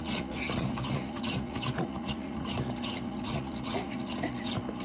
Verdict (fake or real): fake